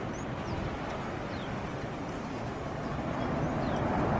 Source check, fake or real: real